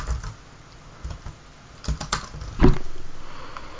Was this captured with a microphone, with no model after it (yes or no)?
yes